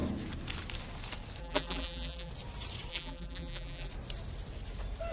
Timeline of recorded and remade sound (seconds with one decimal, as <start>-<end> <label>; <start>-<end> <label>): 0.0-1.4 recorded; 1.4-2.3 remade; 2.3-2.9 recorded; 2.9-3.9 remade; 3.9-5.1 recorded